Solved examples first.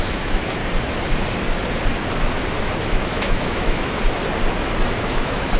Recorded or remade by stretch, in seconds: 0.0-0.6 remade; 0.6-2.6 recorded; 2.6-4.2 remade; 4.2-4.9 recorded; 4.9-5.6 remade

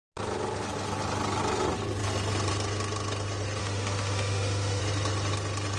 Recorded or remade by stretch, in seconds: 0.0-3.6 recorded; 3.6-4.8 remade; 4.8-5.8 recorded